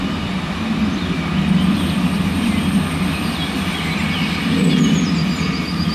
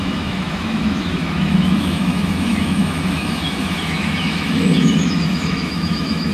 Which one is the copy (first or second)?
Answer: second